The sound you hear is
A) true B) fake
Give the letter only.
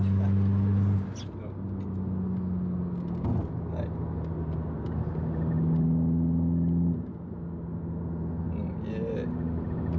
A